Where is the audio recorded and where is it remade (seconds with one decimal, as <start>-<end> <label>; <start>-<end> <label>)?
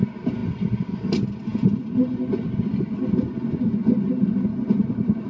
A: 0.0-5.3 recorded